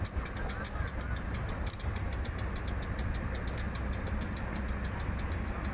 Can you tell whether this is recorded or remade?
recorded